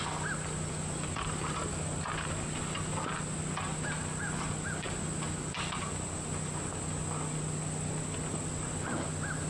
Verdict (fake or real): real